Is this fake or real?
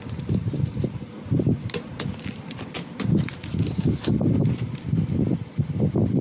real